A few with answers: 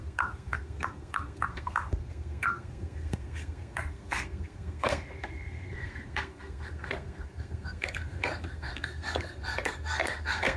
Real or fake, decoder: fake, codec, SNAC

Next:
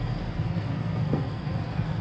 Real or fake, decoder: fake, codec, SNAC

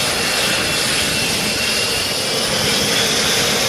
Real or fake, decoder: real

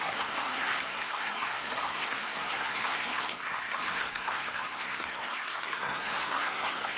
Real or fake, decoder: fake, codec, SNAC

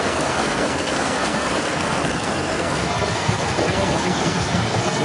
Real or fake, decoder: fake, codec, SNAC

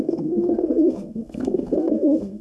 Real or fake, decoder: fake, codec, SNAC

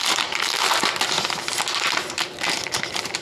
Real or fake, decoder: real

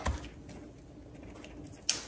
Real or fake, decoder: real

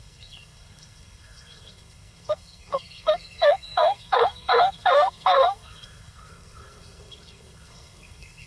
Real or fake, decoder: fake, codec, SNAC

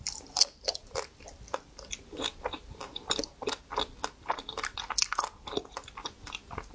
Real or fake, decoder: real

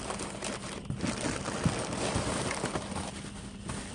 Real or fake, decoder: real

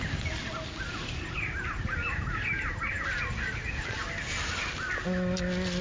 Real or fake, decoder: real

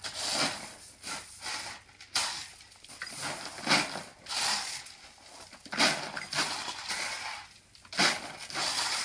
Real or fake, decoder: real